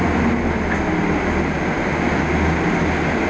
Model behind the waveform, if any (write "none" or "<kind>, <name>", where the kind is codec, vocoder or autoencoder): none